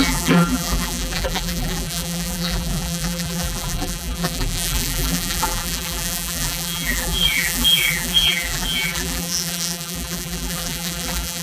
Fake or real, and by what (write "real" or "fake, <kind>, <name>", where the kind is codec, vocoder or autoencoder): fake, vocoder, BigVGAN v2